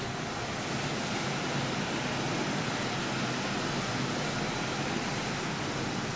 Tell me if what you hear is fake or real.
real